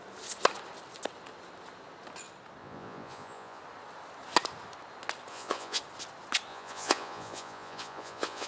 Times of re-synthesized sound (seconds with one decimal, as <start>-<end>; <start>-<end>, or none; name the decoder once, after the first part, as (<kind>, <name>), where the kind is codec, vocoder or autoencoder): 2.6-3.6 (vocoder, Vocos); 5.3-5.8; 6.5-8.5